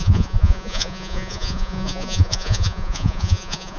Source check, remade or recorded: remade